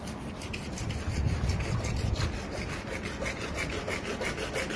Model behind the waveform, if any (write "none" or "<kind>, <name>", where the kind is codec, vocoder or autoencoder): none